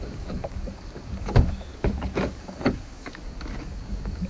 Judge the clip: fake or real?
fake